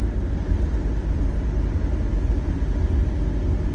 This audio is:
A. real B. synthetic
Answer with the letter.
A